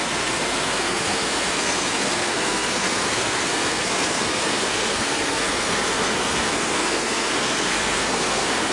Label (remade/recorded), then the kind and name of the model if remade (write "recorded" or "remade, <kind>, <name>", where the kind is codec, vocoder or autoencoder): remade, codec, SNAC